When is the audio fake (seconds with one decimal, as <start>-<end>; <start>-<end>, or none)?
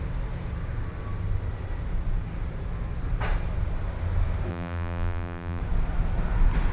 4.5-5.6